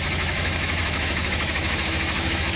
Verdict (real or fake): fake